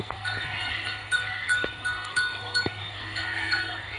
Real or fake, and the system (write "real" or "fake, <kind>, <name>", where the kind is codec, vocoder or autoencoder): fake, codec, SNAC